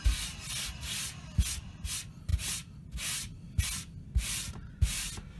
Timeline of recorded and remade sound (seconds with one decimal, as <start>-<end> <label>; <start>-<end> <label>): 0.0-5.4 recorded